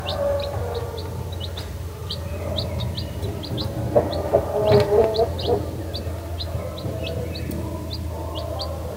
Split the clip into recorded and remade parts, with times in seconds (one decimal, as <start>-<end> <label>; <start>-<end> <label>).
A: 0.0-2.0 recorded; 2.0-5.8 remade; 5.8-9.0 recorded